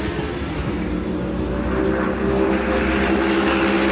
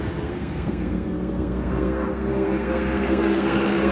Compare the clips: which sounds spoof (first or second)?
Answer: second